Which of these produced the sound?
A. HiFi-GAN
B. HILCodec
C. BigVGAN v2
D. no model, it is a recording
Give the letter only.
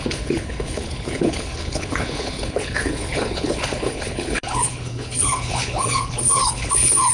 B